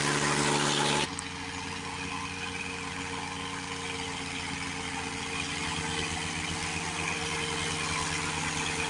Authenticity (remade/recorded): recorded